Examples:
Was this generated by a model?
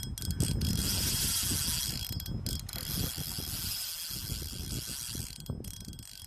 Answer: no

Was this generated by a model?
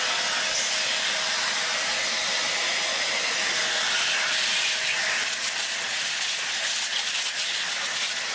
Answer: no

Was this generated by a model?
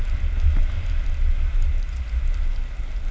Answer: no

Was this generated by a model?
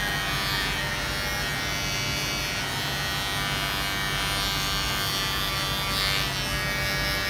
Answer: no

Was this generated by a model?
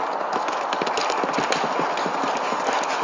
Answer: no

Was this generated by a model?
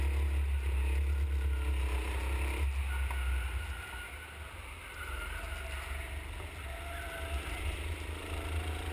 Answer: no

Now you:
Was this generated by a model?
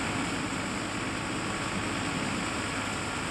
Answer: no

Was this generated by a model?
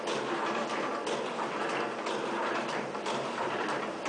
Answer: no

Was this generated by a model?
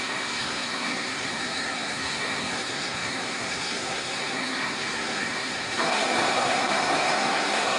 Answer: yes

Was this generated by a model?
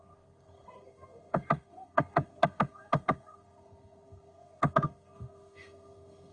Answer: yes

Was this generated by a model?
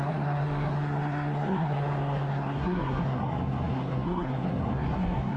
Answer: yes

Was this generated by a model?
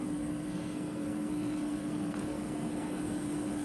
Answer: yes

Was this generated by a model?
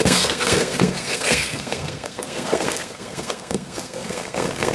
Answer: yes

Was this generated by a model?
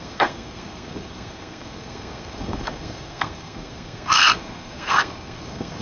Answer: yes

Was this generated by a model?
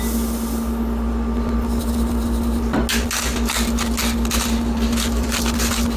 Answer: no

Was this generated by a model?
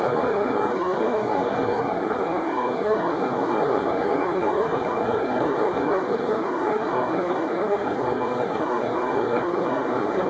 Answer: yes